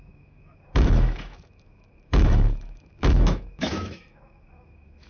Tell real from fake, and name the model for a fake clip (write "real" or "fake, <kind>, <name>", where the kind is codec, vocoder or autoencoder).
fake, autoencoder, DAC-VAE